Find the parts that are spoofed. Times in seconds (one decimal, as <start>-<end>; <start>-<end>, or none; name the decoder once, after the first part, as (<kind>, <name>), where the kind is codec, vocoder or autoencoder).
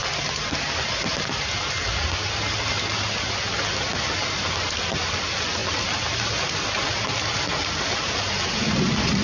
0.0-0.6 (vocoder, BigVGAN v2)